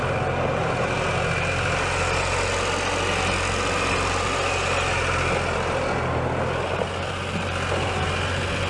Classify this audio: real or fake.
real